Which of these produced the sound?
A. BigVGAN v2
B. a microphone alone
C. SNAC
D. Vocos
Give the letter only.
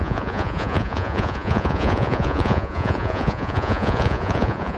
D